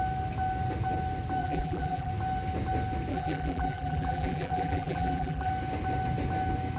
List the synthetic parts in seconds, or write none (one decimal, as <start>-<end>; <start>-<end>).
1.4-2.1; 3.1-5.5